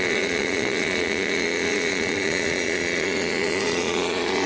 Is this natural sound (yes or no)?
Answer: no